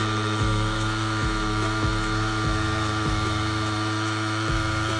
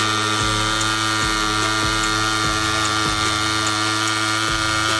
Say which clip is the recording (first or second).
second